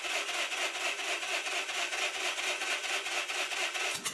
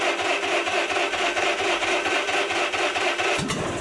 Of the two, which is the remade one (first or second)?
first